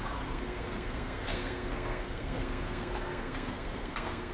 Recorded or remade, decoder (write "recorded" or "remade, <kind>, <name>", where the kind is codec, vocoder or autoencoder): remade, codec, SNAC